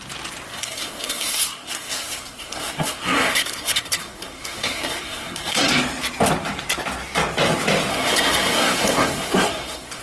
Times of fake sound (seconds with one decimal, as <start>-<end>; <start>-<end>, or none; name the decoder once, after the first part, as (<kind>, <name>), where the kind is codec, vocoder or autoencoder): 0.5-5.7 (codec, SNAC); 7.9-10.0